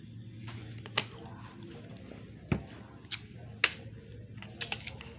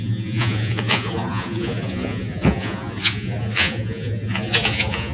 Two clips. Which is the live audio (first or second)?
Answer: first